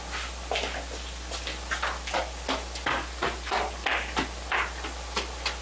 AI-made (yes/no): no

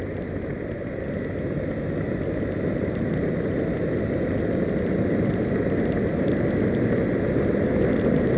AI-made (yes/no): no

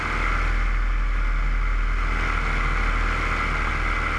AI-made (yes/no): no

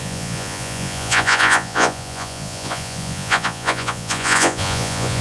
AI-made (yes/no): yes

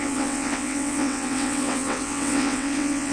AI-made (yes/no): yes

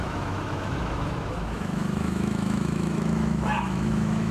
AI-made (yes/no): yes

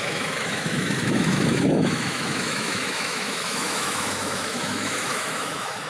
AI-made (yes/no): yes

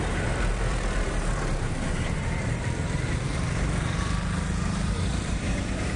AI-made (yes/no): yes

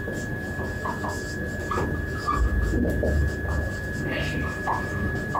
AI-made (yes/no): no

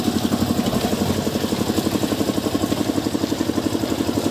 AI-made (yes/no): no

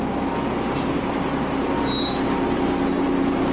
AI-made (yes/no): no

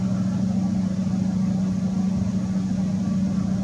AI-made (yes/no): no